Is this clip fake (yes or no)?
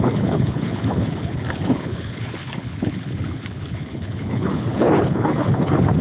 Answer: yes